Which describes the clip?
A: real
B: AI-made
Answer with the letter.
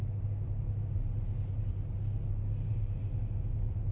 A